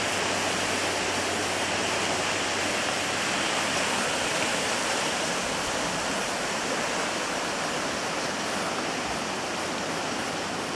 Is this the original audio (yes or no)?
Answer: yes